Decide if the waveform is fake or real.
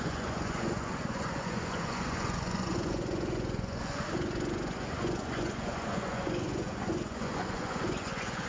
fake